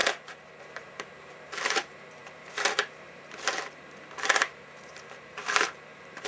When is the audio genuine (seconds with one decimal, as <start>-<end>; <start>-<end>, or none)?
0.0-0.6